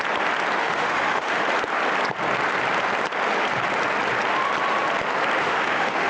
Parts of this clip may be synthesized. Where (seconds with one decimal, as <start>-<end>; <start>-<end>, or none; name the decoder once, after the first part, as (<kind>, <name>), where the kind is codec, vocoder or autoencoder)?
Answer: 0.6-1.4 (autoencoder, DAC-VAE); 5.4-6.1